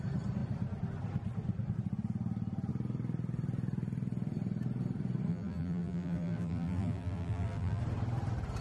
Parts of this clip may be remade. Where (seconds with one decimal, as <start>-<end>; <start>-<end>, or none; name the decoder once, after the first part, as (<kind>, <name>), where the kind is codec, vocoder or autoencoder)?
5.3-7.8 (vocoder, BigVGAN v2)